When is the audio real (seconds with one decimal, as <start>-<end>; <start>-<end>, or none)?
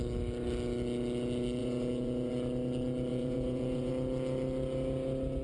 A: 0.0-1.6; 2.3-3.1; 3.9-5.4